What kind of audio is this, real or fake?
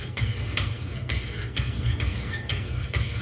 fake